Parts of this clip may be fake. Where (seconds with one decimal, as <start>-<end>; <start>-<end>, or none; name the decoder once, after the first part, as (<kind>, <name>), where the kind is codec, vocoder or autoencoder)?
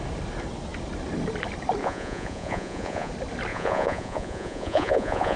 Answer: 1.8-3.1 (vocoder, Vocos); 3.5-5.4